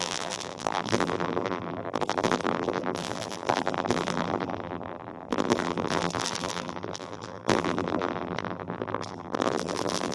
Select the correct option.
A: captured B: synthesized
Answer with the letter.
B